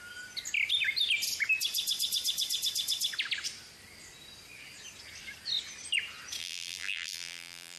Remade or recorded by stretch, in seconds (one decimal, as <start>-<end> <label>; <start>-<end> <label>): 0.0-6.4 recorded; 6.4-7.8 remade